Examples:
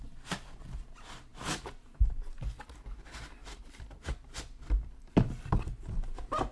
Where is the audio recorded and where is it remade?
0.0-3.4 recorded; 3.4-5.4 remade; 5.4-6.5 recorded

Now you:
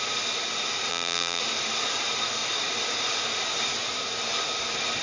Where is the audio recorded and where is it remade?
0.0-0.9 recorded; 0.9-1.4 remade; 1.4-5.0 recorded

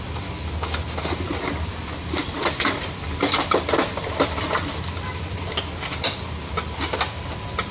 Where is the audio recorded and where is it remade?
0.0-1.3 recorded; 1.3-5.5 remade; 5.5-7.7 recorded